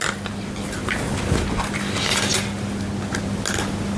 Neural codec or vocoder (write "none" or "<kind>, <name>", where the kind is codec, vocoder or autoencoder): none